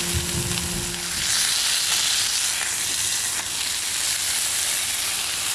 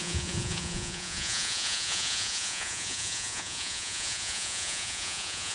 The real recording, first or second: first